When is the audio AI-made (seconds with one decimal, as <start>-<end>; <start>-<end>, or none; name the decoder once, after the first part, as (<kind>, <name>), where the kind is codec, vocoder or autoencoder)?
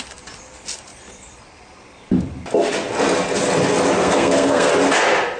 4.0-4.7 (codec, SNAC)